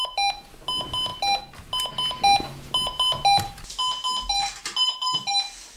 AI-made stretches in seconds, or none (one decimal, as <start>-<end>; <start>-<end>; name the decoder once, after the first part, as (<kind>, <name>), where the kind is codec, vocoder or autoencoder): none